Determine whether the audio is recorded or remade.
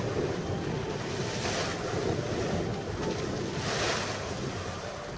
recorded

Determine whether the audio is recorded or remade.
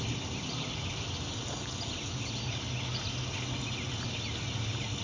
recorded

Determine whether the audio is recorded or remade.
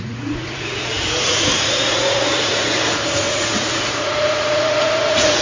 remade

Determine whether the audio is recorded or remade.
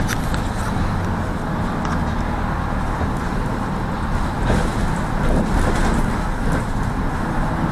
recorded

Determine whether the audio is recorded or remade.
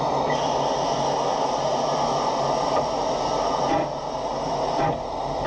recorded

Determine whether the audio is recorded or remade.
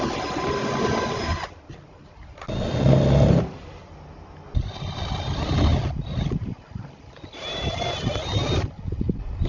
recorded